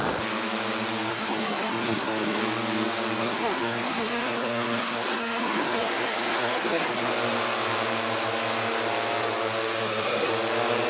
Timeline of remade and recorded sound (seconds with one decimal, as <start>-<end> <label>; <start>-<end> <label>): 0.0-1.1 recorded; 1.1-2.4 remade; 2.4-3.2 recorded; 3.2-7.1 remade; 7.1-9.8 recorded; 9.8-10.3 remade; 10.3-10.9 recorded

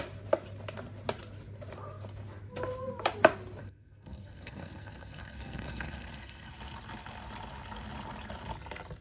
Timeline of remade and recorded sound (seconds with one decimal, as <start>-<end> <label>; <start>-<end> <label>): 0.0-3.6 recorded; 3.6-6.5 remade; 6.5-9.0 recorded